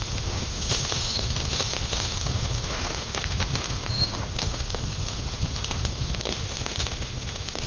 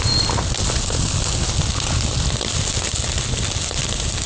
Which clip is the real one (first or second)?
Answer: second